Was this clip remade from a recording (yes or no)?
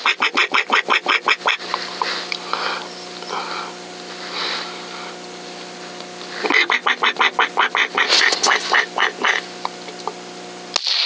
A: no